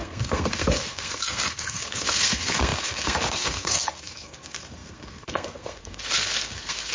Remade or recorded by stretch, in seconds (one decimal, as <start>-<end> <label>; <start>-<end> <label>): 0.0-6.9 remade